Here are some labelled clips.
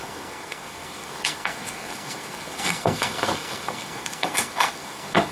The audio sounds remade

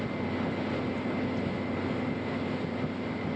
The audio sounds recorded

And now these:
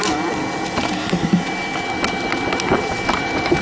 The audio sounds recorded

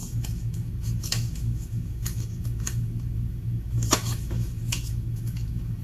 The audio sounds remade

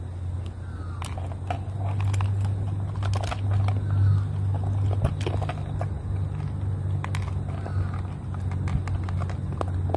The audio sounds recorded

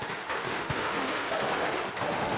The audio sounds remade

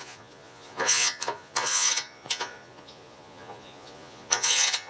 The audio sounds remade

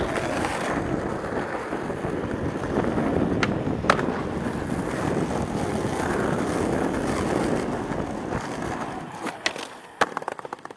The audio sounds recorded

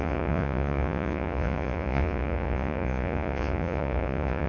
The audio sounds remade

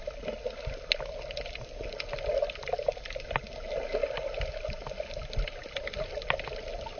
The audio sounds recorded